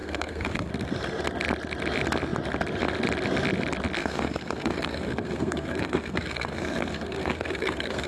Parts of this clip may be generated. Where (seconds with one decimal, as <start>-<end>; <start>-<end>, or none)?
0.0-0.7; 4.0-8.1